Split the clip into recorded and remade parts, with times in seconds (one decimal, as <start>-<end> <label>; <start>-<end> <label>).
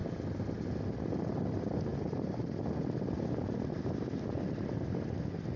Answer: 0.0-5.6 recorded